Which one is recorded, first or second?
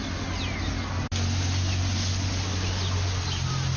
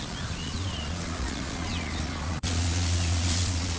first